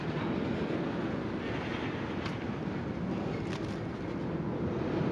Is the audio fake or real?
real